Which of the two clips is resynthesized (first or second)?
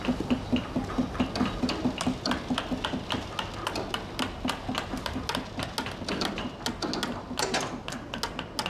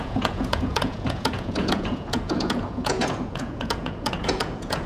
second